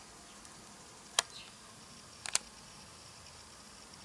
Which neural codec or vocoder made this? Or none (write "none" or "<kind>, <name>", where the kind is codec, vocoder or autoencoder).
none